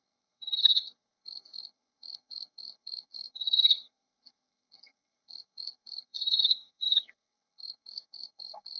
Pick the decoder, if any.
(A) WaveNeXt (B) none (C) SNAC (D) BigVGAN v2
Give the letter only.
C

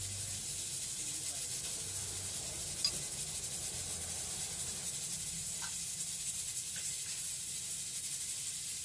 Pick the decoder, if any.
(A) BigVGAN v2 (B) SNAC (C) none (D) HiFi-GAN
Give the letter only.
C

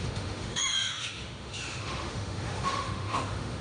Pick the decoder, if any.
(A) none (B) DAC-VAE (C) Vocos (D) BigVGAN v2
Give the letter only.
B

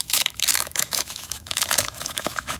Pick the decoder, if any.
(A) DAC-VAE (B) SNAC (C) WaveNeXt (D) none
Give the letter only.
A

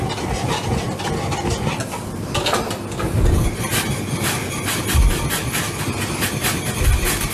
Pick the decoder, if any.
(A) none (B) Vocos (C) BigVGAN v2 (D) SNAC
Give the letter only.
A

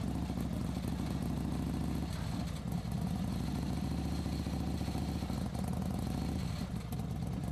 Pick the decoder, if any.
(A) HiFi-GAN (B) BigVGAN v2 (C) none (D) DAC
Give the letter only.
C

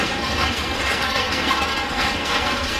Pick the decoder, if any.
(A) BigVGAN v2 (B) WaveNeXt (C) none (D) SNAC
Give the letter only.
D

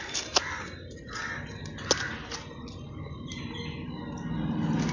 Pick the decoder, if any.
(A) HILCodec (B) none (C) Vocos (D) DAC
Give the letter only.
B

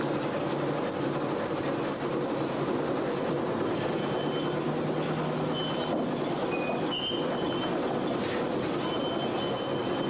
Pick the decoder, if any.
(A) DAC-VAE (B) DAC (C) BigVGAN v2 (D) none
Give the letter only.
D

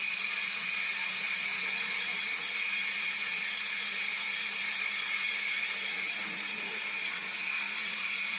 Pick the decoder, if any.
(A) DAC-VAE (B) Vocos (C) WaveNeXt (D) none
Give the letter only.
B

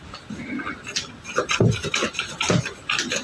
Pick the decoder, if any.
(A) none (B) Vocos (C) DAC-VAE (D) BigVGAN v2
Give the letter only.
A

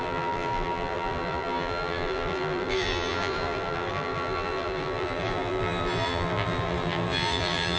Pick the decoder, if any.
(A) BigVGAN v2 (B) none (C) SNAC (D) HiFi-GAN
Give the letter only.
A